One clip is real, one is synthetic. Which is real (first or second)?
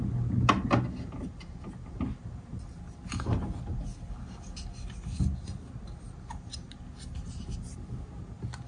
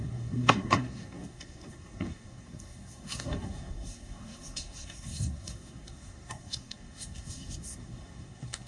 first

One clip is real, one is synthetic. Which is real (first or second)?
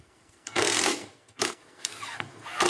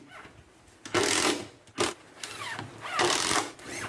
second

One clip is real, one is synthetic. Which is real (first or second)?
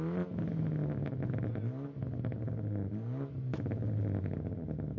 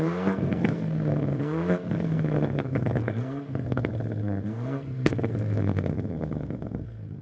first